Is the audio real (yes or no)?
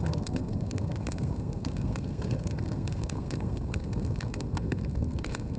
no